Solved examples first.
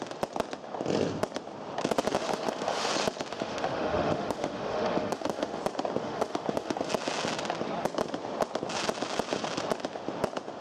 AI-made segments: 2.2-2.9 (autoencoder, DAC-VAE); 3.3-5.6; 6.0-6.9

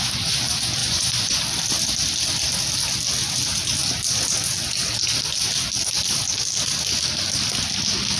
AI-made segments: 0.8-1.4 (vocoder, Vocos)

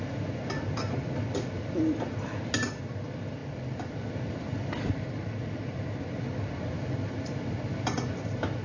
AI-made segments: none

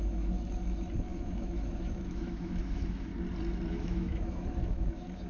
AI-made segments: 0.0-3.1 (autoencoder, DAC-VAE); 3.7-5.3

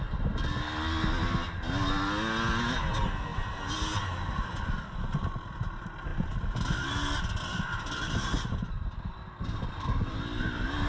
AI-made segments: 3.3-4.6 (vocoder, BigVGAN v2)

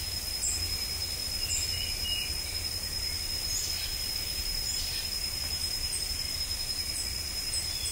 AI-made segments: none

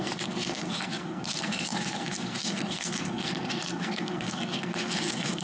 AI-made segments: 0.0-5.4 (codec, SNAC)